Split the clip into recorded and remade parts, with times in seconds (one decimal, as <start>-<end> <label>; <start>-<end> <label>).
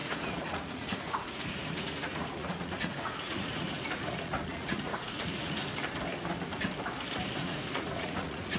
0.0-5.6 remade; 5.6-7.4 recorded; 7.4-8.6 remade